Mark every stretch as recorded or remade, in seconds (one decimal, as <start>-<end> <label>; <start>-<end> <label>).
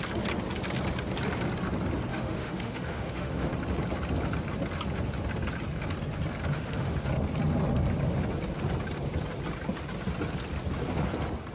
0.0-2.1 recorded; 2.1-3.5 remade; 3.5-6.5 recorded; 6.5-7.1 remade; 7.1-11.5 recorded